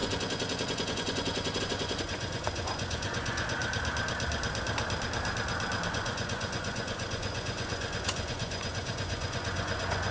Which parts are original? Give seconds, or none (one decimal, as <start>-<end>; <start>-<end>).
3.6-5.9